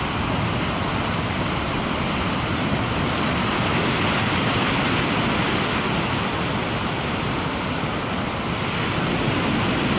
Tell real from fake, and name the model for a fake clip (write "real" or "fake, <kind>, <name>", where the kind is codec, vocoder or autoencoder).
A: real